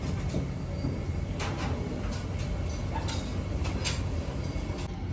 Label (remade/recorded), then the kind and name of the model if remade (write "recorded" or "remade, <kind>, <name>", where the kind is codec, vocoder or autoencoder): recorded